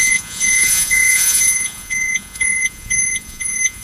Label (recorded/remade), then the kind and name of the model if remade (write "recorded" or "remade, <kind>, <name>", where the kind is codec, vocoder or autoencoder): remade, vocoder, Vocos